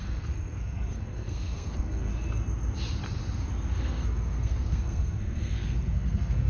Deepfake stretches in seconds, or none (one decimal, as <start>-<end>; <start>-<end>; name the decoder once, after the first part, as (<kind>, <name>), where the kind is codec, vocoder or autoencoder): 0.0-2.1 (codec, SNAC); 3.8-6.5